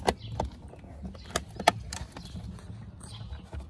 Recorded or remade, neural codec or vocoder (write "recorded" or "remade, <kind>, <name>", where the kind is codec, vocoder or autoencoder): recorded